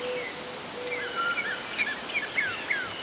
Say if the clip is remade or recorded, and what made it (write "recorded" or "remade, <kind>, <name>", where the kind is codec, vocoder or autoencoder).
recorded